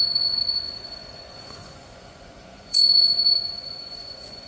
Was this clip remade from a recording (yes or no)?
yes